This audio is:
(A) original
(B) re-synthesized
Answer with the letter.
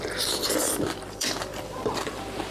B